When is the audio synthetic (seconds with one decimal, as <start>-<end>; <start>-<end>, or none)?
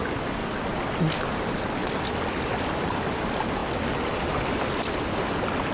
none